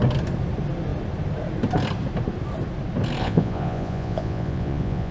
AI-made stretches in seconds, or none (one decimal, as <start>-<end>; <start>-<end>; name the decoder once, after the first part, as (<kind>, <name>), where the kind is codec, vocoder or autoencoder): 3.2-5.1 (vocoder, Vocos)